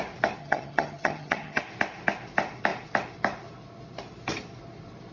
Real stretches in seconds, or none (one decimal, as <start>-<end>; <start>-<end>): 0.0-0.4; 1.6-5.1